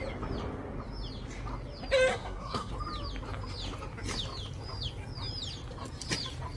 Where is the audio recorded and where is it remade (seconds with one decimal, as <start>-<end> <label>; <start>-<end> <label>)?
0.0-2.1 recorded; 2.1-2.7 remade; 2.7-6.6 recorded